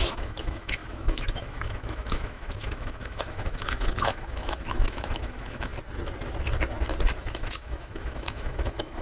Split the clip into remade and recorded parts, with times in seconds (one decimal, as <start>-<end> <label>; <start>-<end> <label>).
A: 0.0-5.7 remade; 5.7-7.2 recorded; 7.2-9.0 remade